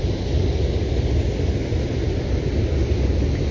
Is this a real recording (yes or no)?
yes